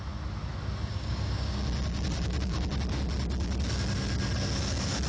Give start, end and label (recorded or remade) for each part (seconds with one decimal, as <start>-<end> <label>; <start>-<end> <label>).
0.0-0.9 recorded; 0.9-2.7 remade; 2.7-5.1 recorded

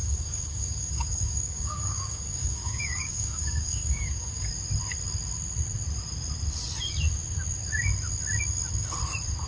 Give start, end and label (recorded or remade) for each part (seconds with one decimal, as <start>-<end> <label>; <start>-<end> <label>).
0.0-4.5 remade; 4.5-9.5 recorded

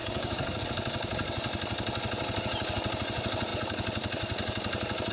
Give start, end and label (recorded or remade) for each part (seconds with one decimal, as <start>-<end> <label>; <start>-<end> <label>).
0.0-0.6 remade; 0.6-5.1 recorded

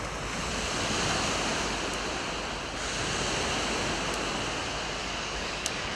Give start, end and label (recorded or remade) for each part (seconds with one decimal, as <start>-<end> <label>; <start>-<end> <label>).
0.0-5.0 recorded; 5.0-6.0 remade

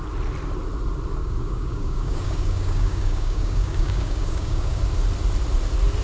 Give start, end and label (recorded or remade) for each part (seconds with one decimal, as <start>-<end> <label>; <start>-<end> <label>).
0.0-1.2 recorded; 1.2-4.8 remade; 4.8-6.0 recorded

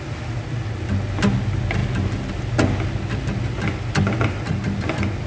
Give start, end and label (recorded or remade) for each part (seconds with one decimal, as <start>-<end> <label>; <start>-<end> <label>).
0.0-5.3 recorded

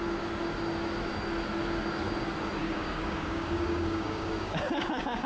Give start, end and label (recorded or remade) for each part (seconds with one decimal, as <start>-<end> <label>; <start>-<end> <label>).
0.0-2.6 recorded; 2.6-5.3 remade

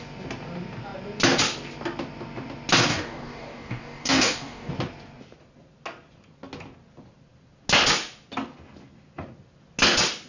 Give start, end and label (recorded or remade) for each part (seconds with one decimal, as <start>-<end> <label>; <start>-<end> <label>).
0.0-2.9 recorded; 2.9-4.7 remade; 4.7-10.3 recorded